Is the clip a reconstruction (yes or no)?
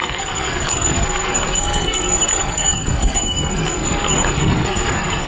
yes